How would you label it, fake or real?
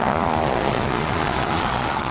fake